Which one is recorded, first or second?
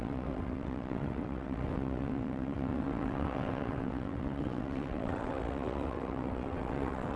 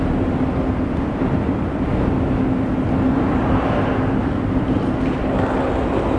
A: second